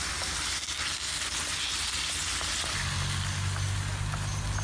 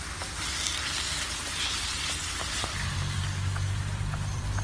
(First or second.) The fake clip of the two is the second